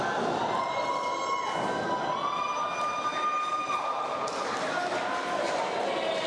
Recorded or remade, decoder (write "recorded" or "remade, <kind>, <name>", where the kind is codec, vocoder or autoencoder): recorded